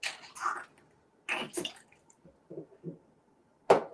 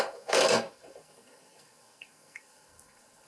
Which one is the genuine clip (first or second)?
first